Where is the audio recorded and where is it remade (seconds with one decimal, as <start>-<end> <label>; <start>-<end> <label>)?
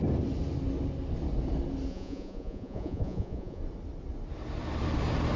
0.0-1.9 recorded; 1.9-3.6 remade; 3.6-5.4 recorded